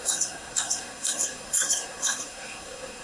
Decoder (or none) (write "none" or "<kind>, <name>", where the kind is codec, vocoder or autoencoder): codec, SNAC